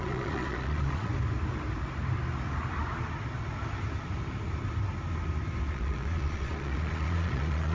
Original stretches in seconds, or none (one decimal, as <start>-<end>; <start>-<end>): 1.1-5.7

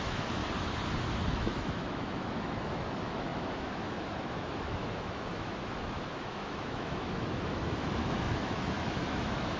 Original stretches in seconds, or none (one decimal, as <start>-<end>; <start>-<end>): 0.4-1.3

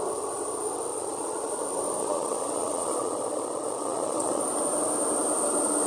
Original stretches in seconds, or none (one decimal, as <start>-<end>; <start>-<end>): 0.0-0.9; 1.6-2.0; 4.4-5.9

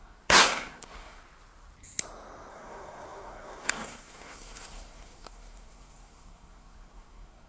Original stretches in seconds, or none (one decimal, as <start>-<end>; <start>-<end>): 1.2-2.5

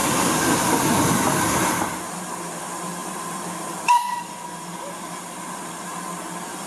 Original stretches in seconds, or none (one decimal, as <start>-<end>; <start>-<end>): 1.1-3.0; 4.3-6.7

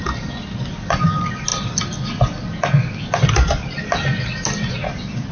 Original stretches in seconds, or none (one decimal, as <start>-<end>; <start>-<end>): 0.0-0.8; 1.5-4.7